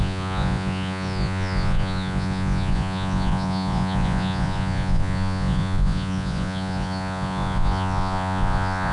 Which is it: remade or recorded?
remade